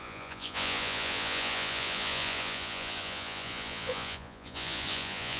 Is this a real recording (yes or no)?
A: no